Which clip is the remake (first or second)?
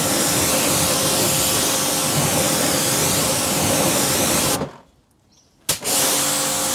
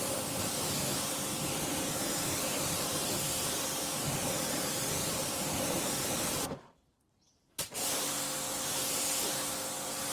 second